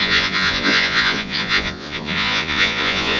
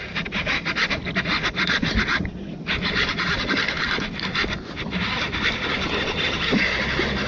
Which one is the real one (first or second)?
second